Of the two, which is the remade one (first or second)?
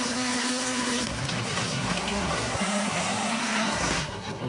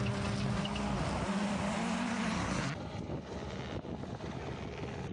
first